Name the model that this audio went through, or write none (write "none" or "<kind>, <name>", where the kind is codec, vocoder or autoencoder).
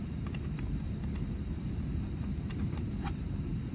vocoder, BigVGAN v2